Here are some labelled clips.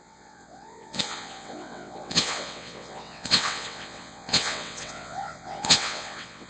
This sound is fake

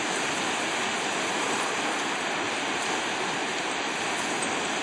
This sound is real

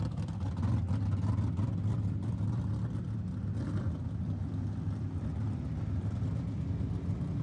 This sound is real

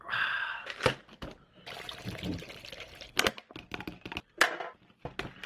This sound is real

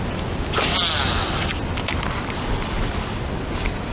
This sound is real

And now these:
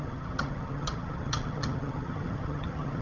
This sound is fake